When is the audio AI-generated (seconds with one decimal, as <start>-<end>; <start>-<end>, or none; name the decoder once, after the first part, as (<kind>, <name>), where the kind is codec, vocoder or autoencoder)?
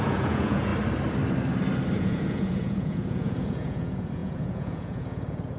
0.0-0.7 (vocoder, Vocos); 2.0-5.6